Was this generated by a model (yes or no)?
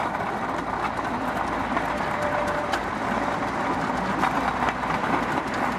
no